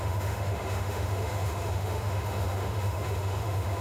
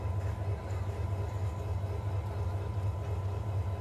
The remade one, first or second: first